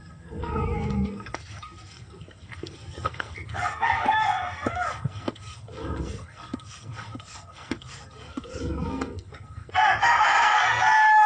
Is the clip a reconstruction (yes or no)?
yes